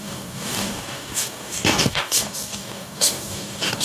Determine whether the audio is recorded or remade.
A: remade